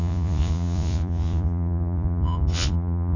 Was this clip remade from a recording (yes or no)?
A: yes